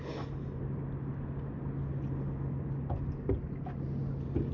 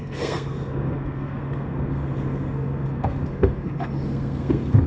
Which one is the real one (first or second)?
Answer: first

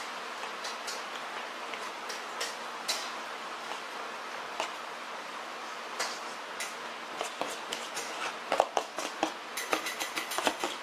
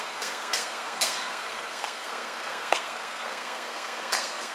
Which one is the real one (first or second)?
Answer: first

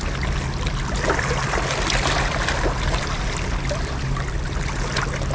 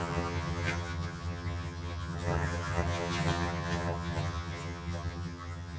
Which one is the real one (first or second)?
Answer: first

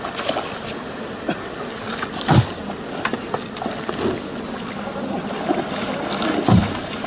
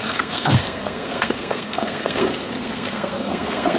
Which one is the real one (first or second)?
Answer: first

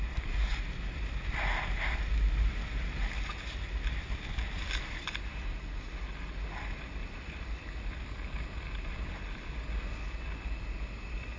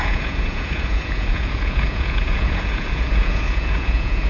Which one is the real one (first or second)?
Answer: first